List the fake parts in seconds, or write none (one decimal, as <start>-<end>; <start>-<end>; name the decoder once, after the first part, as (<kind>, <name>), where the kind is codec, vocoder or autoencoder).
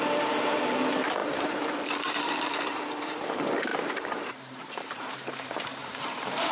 0.0-6.5 (vocoder, BigVGAN v2)